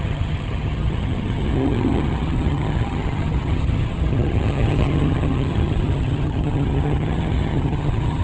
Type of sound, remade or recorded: remade